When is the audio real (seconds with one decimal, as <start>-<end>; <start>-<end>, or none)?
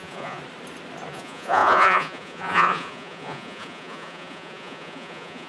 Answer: 0.4-1.1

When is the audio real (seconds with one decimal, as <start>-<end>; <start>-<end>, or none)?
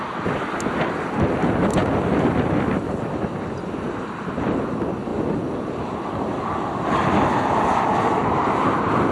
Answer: 0.0-9.1